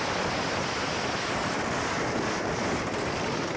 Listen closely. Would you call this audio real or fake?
real